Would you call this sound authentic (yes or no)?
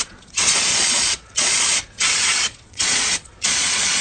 no